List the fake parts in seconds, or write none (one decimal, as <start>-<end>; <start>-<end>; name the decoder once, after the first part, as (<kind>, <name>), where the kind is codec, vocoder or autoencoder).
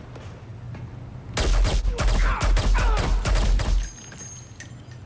none